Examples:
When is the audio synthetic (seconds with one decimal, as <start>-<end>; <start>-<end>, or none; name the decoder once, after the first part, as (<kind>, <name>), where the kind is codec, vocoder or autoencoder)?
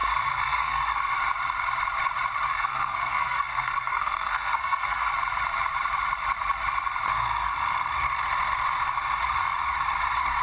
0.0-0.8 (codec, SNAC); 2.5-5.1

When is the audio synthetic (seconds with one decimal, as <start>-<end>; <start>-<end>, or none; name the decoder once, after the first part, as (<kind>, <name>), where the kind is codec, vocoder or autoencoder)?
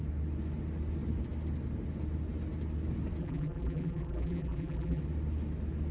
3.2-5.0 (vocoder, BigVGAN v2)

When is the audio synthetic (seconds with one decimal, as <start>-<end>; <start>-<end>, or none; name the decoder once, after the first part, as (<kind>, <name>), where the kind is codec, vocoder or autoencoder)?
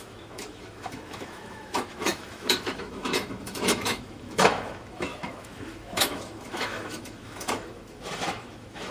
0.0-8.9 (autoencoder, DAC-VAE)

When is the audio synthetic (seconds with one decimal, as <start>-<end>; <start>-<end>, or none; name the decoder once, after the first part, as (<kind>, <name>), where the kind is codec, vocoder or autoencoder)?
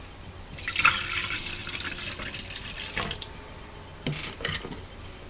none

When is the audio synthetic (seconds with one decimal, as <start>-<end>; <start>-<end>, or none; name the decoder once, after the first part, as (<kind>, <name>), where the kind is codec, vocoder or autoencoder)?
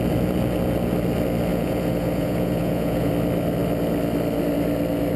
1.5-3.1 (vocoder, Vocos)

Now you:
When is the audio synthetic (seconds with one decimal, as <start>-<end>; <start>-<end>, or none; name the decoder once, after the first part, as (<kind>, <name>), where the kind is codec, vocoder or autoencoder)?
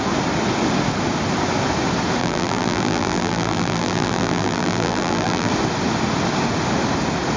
2.2-5.5 (vocoder, BigVGAN v2)